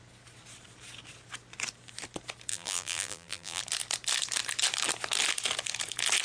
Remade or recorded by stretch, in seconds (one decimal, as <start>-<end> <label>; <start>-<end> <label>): 0.0-2.5 recorded; 2.5-3.6 remade; 3.6-6.2 recorded